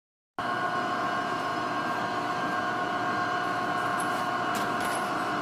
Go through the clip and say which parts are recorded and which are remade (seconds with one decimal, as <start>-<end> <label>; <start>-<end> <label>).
0.0-3.9 recorded; 3.9-5.4 remade